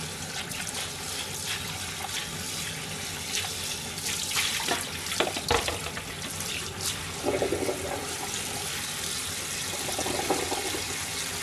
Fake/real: real